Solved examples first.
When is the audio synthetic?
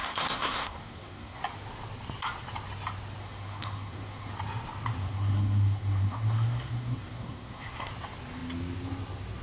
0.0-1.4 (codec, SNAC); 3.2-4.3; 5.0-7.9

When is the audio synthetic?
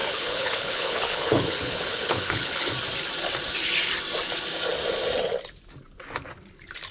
0.0-2.7 (codec, HILCodec)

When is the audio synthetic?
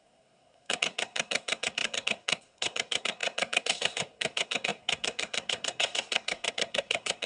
0.0-7.3 (codec, SNAC)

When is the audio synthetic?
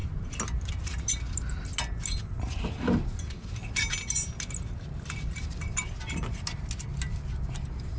none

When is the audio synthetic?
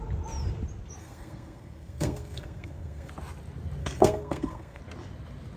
1.0-3.1 (codec, SNAC); 3.8-4.8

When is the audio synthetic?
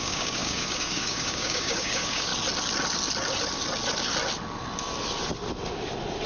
0.0-2.3 (codec, DAC)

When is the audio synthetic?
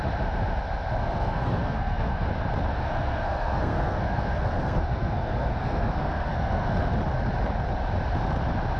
1.0-2.3 (codec, SNAC); 2.7-6.9